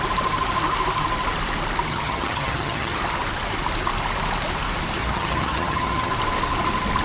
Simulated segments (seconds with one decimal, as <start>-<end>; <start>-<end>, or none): 1.9-3.0; 5.0-6.1